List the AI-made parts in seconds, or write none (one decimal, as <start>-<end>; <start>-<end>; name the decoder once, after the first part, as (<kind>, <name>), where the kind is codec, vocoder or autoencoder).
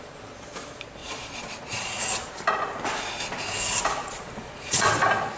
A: 1.0-2.3 (vocoder, Vocos); 4.0-4.9